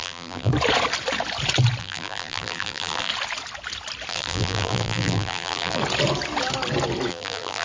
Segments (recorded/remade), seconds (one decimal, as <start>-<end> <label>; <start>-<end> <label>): 0.0-0.5 remade; 0.5-1.8 recorded; 1.8-3.1 remade; 3.1-4.1 recorded; 4.1-5.8 remade; 5.8-7.1 recorded; 7.1-7.6 remade